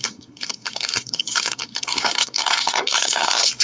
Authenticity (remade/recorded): remade